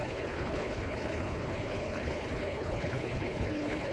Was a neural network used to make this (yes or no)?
yes